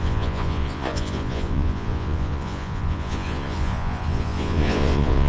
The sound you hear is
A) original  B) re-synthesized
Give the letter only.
B